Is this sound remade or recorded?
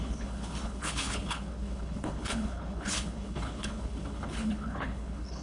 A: remade